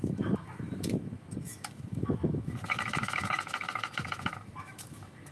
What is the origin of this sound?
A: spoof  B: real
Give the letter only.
A